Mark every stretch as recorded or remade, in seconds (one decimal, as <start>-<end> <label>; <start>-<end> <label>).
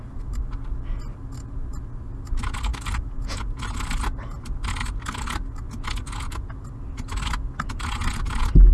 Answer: 0.0-8.7 recorded